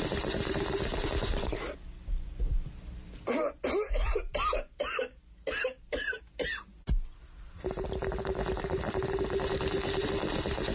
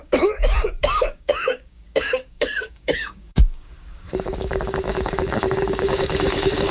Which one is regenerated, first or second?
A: second